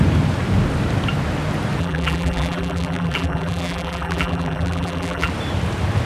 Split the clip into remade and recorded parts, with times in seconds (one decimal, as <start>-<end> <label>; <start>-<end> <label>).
0.0-1.8 recorded; 1.8-5.3 remade; 5.3-6.1 recorded